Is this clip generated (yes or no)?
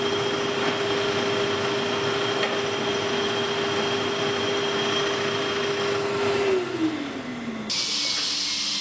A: no